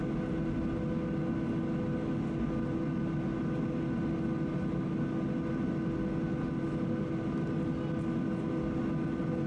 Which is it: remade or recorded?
recorded